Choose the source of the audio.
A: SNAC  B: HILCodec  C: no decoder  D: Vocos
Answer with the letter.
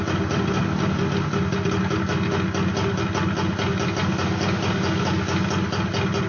C